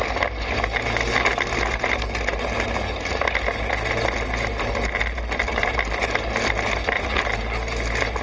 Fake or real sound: real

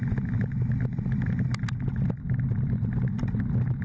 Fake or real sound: real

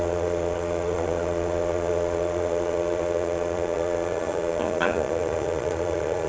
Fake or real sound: fake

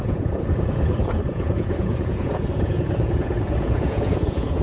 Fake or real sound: fake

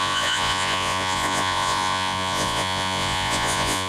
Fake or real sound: fake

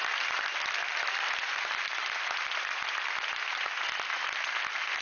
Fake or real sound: real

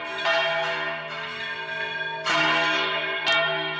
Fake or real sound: real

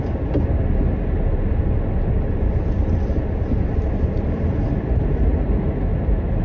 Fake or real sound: real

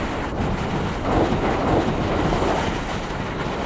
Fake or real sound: real